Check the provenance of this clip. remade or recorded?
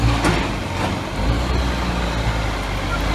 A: recorded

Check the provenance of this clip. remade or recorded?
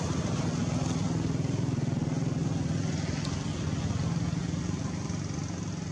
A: recorded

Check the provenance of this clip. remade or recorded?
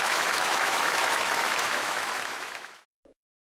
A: remade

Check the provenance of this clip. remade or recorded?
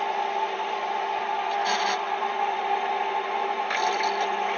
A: recorded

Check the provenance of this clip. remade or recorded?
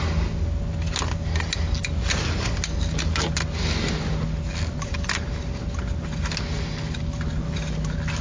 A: recorded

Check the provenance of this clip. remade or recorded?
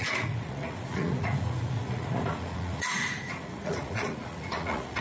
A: remade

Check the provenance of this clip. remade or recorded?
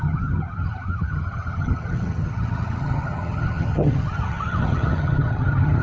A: remade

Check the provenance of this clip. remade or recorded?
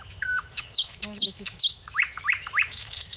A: remade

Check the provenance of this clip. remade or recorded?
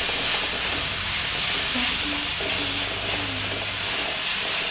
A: recorded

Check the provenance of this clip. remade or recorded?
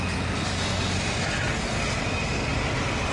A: recorded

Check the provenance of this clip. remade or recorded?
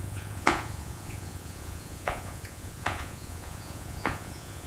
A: remade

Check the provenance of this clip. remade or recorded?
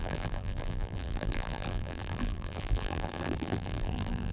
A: remade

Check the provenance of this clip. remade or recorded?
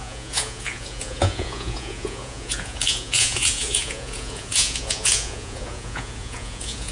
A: remade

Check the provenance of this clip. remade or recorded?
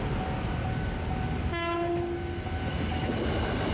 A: recorded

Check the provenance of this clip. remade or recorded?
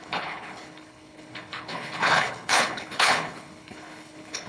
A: remade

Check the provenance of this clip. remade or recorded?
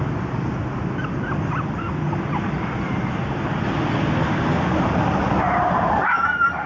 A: recorded